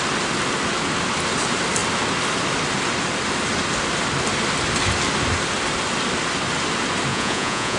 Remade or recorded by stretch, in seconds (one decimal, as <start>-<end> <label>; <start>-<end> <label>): 0.0-7.1 recorded; 7.1-7.8 remade